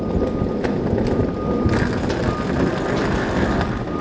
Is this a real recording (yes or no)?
yes